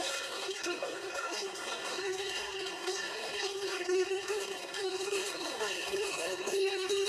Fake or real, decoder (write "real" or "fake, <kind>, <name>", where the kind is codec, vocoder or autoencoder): fake, codec, SNAC